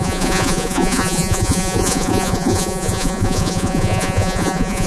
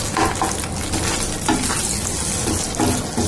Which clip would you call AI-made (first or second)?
first